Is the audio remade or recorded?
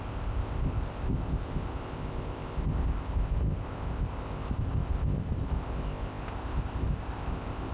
remade